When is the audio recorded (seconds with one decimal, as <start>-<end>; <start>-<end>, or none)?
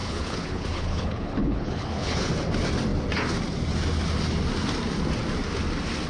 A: 2.3-6.1